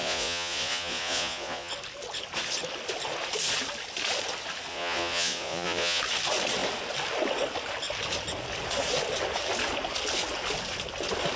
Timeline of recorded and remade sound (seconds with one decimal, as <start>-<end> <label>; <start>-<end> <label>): 0.0-1.7 remade; 1.7-4.7 recorded; 4.7-6.0 remade; 6.0-11.4 recorded